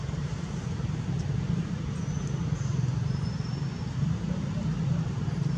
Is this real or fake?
fake